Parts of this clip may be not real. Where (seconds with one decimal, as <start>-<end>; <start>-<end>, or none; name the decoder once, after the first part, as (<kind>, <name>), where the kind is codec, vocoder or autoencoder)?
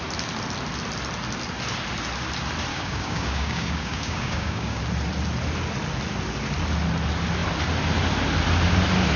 2.7-4.8 (codec, DAC)